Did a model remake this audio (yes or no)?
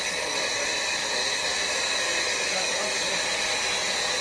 no